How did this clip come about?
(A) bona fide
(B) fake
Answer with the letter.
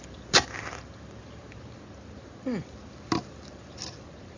A